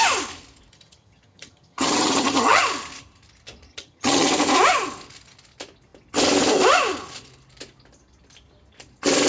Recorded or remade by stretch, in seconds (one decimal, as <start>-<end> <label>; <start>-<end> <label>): 0.0-0.7 recorded; 0.7-2.6 remade; 2.6-3.7 recorded; 3.7-4.3 remade; 4.3-9.3 recorded